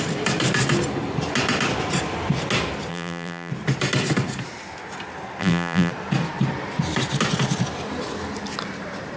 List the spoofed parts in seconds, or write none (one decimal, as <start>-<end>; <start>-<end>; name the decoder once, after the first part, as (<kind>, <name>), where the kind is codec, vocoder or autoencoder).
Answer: 2.9-3.5 (vocoder, BigVGAN v2); 5.4-5.9